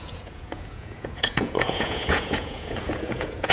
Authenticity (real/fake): fake